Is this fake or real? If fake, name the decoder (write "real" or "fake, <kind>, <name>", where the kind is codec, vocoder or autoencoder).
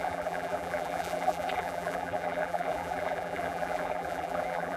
fake, vocoder, BigVGAN v2